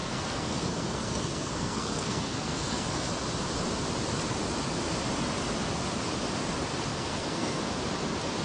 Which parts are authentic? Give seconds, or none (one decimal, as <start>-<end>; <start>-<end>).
3.1-6.9; 7.6-8.4